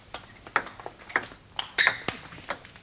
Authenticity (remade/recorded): recorded